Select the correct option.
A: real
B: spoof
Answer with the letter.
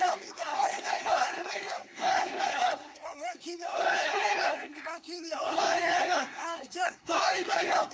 B